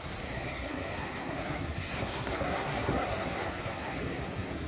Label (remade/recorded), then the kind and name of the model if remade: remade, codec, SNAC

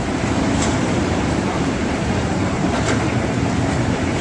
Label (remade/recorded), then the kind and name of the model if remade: remade, vocoder, BigVGAN v2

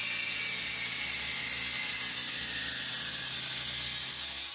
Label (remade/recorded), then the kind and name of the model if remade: recorded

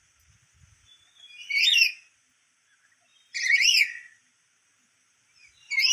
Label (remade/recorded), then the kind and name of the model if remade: recorded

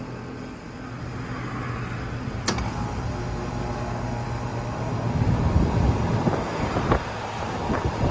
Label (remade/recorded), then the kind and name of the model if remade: recorded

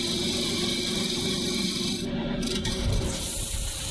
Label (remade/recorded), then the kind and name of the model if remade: remade, vocoder, BigVGAN v2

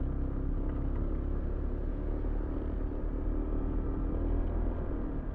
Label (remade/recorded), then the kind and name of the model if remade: recorded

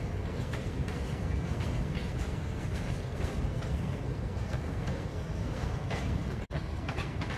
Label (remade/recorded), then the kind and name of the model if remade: remade, codec, SNAC